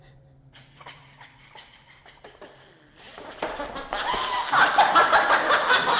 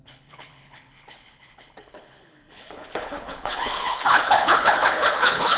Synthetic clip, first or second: second